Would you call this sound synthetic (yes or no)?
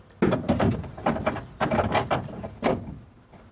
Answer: no